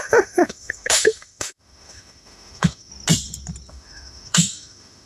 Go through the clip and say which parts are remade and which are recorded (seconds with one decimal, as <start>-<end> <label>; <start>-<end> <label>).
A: 0.0-2.9 remade; 2.9-3.7 recorded; 3.7-5.1 remade